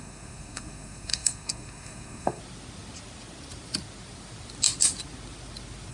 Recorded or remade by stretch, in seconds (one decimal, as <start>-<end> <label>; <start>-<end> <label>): 0.0-2.4 remade; 2.4-5.9 recorded